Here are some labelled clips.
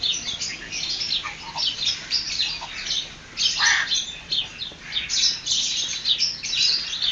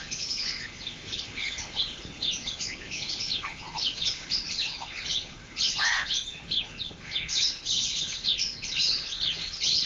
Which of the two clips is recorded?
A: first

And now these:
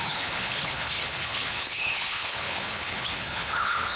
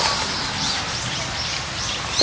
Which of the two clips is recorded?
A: second